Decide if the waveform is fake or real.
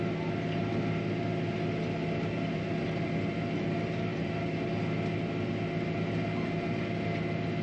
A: real